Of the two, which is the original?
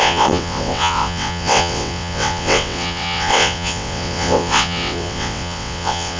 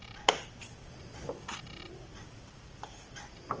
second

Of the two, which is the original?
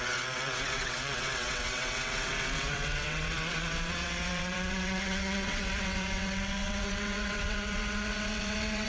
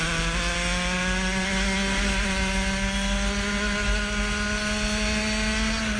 second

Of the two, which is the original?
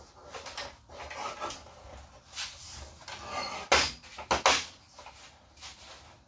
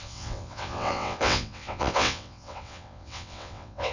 first